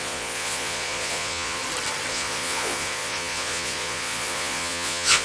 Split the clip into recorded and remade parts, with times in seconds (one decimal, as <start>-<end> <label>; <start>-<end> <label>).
0.0-1.6 remade; 1.6-2.1 recorded; 2.1-5.2 remade